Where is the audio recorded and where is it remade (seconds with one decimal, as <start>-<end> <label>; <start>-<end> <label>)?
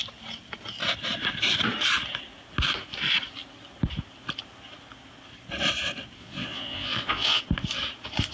0.0-6.2 recorded; 6.2-7.4 remade; 7.4-8.3 recorded